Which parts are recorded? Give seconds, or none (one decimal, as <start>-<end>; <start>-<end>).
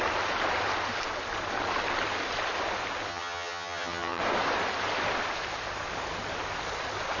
0.0-3.1; 4.2-7.2